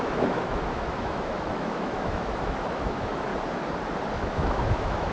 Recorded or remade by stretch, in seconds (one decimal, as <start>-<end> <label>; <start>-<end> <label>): 0.0-3.3 remade; 3.3-4.1 recorded; 4.1-5.1 remade